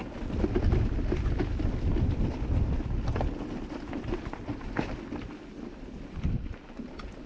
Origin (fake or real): real